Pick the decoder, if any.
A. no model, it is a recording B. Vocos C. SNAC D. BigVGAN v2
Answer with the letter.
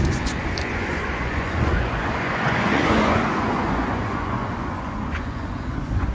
B